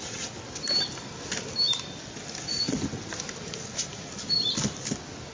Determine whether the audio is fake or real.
real